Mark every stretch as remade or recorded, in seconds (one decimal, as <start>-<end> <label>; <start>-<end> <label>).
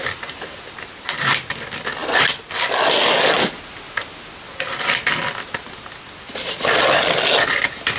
0.0-8.0 recorded